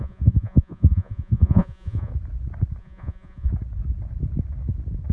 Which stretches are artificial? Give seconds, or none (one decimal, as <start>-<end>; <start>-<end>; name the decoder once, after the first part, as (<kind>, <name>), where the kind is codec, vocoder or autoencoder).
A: 0.0-2.1 (vocoder, Vocos); 2.8-3.5